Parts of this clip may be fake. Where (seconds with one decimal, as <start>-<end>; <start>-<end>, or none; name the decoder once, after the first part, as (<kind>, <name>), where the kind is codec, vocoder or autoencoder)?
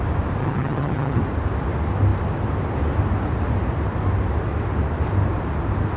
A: 0.4-1.2 (vocoder, HiFi-GAN)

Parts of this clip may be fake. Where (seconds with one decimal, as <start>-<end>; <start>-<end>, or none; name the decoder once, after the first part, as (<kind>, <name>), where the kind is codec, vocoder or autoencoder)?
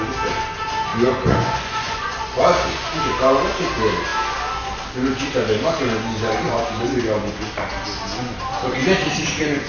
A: 0.9-2.9 (vocoder, Vocos); 8.8-9.7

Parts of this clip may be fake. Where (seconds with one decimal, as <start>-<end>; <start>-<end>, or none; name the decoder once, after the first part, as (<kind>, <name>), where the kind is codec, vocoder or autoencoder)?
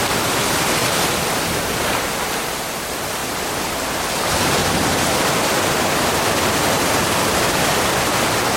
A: none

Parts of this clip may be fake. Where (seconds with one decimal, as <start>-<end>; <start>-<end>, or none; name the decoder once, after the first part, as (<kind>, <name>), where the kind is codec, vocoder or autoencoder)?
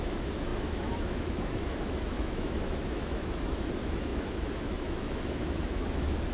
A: 0.0-6.3 (autoencoder, DAC-VAE)